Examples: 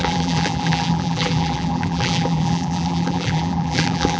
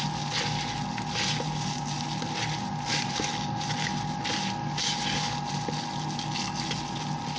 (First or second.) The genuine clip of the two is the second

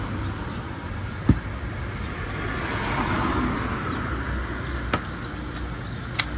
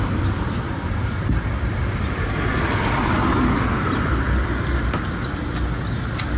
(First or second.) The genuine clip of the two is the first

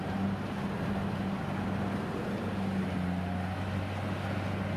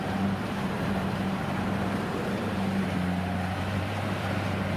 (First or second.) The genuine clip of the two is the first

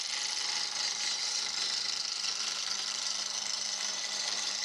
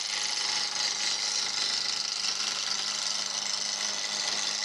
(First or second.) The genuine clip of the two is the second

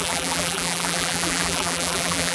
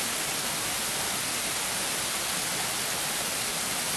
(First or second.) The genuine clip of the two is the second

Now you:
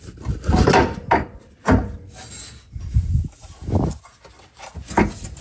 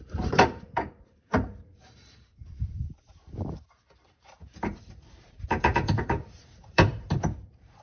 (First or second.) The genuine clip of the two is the first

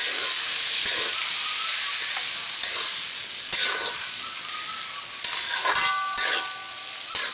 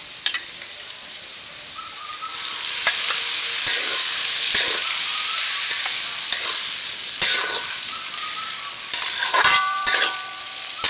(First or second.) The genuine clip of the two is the first